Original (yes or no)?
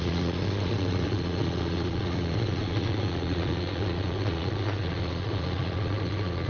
no